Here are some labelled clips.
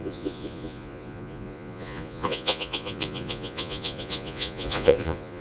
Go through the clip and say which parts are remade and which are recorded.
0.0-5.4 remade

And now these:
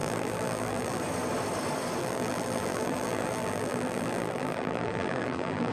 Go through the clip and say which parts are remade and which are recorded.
0.0-1.0 remade; 1.0-2.0 recorded; 2.0-5.7 remade

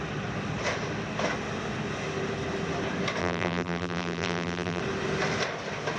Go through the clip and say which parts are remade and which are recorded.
0.0-3.2 recorded; 3.2-4.8 remade; 4.8-6.0 recorded

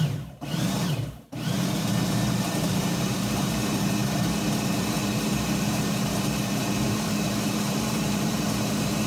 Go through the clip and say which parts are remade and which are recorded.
0.0-9.1 remade